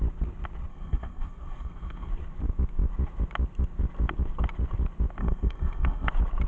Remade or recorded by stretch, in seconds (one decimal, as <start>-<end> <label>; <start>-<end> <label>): 0.0-0.7 recorded; 0.7-2.1 remade; 2.1-5.2 recorded; 5.2-6.1 remade; 6.1-6.5 recorded